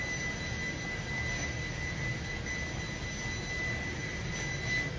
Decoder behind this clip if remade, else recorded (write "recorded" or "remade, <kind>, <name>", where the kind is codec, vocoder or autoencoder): recorded